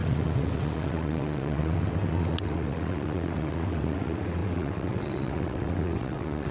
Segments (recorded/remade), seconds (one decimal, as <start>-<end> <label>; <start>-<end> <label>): 0.0-6.5 remade